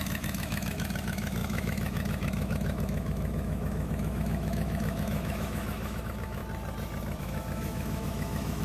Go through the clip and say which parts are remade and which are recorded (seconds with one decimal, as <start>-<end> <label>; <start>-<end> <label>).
0.0-6.4 remade; 6.4-7.2 recorded; 7.2-8.6 remade